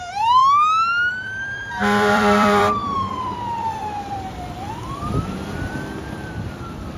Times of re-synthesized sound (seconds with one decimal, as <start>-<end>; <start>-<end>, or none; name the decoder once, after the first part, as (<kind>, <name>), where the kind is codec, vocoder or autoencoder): 0.0-0.4 (vocoder, BigVGAN v2); 1.1-7.0